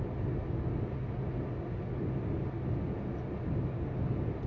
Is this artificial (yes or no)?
no